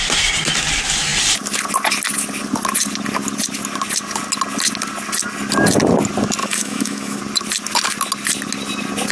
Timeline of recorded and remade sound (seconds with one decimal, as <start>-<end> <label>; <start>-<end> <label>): 0.0-6.4 recorded; 6.4-7.2 remade; 7.2-9.1 recorded